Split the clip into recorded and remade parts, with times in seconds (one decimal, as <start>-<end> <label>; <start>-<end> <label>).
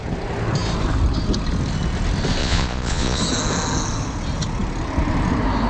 0.0-2.4 recorded; 2.4-3.2 remade; 3.2-5.7 recorded